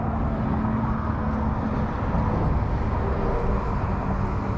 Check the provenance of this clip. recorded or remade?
recorded